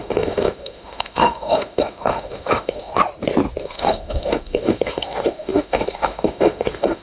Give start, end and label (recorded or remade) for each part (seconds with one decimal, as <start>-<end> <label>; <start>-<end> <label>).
0.0-2.9 remade; 2.9-3.6 recorded; 3.6-7.0 remade